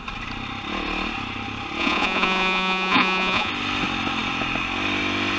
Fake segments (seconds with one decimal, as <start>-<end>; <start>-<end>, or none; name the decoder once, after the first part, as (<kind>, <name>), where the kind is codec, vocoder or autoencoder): 1.8-3.5 (vocoder, Vocos)